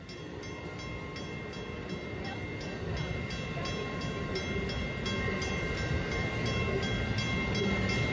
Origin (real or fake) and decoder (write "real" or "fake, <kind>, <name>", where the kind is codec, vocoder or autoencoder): real